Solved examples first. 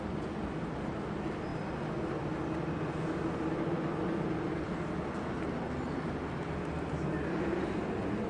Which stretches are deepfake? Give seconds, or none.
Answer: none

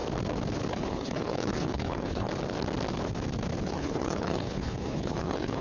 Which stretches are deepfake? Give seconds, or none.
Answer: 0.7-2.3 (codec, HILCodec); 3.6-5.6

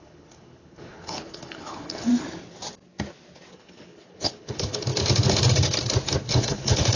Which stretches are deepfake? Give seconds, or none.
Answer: 0.0-2.1 (codec, HILCodec); 3.5-4.9; 6.3-7.0

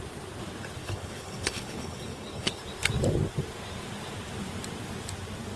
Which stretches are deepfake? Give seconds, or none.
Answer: 0.8-2.6 (codec, HILCodec)

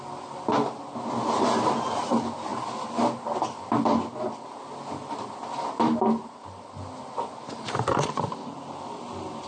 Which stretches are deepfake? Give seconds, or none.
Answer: none

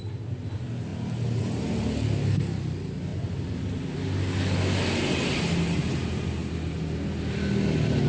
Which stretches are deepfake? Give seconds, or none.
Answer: none

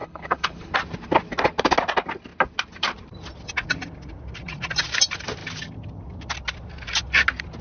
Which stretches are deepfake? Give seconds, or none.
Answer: 0.0-0.7 (codec, HILCodec)

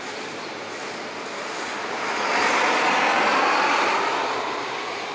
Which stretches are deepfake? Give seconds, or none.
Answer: none